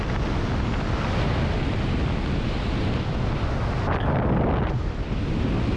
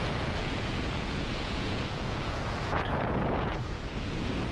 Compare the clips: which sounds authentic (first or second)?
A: first